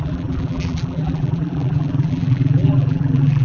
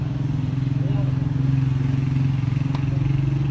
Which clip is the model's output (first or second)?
first